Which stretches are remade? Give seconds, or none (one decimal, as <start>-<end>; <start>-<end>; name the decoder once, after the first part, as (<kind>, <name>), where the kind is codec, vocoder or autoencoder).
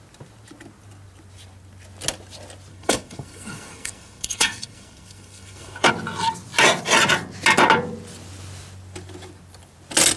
2.7-5.9 (codec, SNAC)